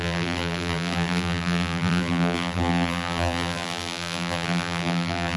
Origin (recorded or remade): remade